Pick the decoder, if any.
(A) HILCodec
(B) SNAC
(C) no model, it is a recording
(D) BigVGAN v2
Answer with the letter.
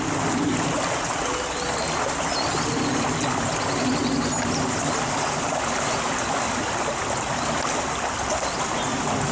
C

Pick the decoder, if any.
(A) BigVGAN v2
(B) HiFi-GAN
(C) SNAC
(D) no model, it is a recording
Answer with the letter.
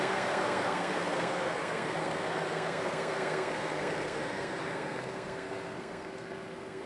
C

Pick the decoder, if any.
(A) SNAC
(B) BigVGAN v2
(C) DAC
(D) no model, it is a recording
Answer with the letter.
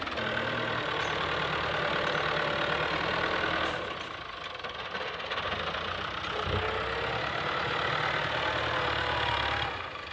D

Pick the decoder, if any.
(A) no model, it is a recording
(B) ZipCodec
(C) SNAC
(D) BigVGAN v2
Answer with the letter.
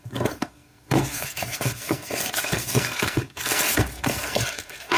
C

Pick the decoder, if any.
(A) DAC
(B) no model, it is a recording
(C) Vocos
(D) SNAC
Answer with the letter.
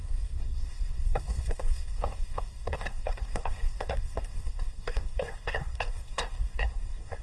D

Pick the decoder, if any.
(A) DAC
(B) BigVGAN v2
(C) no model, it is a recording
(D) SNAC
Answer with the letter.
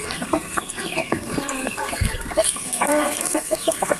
D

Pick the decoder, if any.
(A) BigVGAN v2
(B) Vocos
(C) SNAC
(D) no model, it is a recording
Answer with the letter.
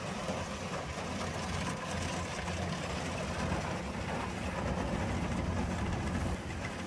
D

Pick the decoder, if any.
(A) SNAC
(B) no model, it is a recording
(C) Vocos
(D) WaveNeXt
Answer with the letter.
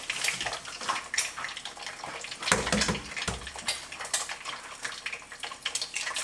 B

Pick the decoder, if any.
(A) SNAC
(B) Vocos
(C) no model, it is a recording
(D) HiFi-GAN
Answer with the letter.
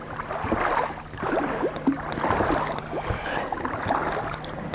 C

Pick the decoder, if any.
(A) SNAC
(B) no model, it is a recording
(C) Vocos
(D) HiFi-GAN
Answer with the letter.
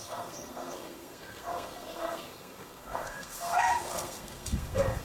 A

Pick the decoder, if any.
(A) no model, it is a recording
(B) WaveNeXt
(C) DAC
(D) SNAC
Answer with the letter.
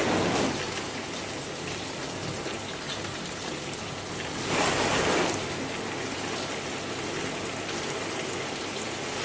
A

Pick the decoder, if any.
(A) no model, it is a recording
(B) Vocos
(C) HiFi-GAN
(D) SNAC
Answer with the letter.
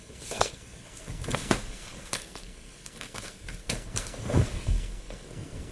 D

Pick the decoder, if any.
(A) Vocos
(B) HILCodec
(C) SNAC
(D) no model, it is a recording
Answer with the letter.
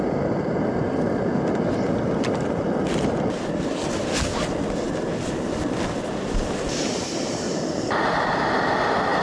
D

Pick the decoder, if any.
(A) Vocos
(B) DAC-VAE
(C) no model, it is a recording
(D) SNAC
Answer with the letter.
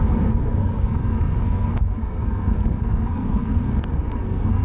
D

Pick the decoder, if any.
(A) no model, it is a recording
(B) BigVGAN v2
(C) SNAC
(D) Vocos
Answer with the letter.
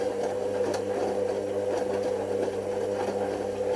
A